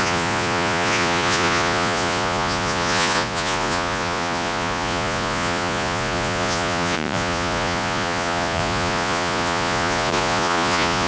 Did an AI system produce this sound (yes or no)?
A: yes